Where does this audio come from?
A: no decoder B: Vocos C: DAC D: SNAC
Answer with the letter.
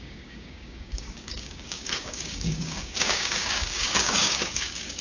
C